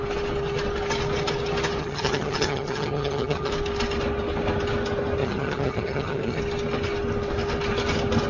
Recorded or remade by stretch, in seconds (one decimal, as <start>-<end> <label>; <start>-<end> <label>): 0.0-1.8 recorded; 1.8-3.5 remade; 3.5-5.2 recorded; 5.2-6.4 remade; 6.4-8.3 recorded